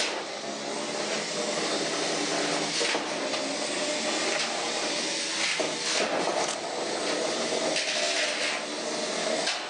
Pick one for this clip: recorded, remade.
recorded